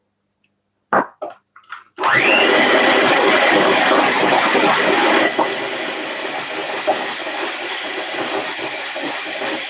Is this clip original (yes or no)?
yes